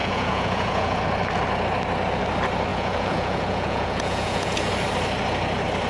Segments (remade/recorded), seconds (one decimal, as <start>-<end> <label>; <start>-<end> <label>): 0.0-1.0 remade; 1.0-2.7 recorded; 2.7-4.7 remade; 4.7-5.9 recorded